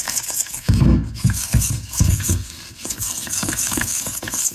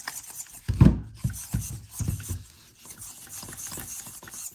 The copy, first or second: first